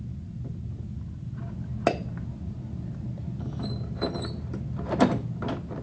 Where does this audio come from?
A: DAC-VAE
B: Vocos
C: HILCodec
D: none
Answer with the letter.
D